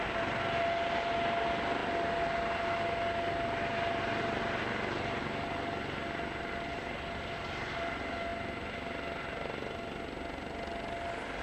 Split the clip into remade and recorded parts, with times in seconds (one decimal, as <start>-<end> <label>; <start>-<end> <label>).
0.0-11.4 recorded